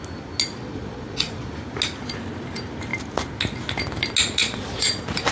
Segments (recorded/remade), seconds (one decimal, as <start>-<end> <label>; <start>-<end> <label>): 0.0-0.6 recorded; 0.6-1.5 remade; 1.5-4.4 recorded; 4.4-5.3 remade